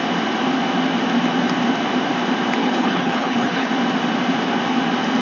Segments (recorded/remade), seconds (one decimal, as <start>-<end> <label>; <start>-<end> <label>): 0.0-2.6 recorded; 2.6-3.7 remade; 3.7-5.2 recorded